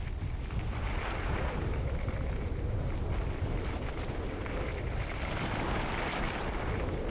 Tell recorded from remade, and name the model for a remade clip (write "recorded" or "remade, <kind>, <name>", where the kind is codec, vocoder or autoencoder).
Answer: recorded